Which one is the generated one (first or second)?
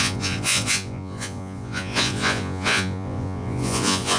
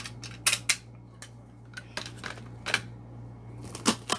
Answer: first